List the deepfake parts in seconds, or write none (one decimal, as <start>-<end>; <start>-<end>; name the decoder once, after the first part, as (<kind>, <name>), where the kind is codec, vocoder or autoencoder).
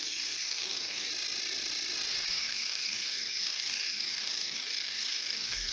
0.0-1.1 (codec, DAC); 2.3-5.7